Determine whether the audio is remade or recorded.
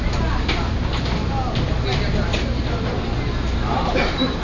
recorded